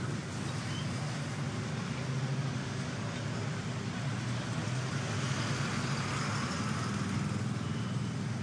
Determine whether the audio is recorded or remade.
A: recorded